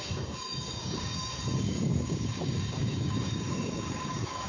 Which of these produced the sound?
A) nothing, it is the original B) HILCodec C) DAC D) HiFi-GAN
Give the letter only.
C